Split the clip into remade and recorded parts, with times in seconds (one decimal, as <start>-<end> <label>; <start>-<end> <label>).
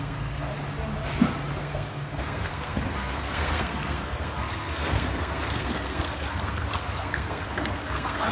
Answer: 0.0-0.5 remade; 0.5-1.6 recorded; 1.6-8.3 remade